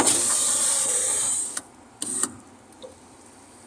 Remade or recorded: recorded